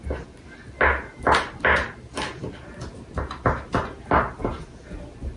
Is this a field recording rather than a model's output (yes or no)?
yes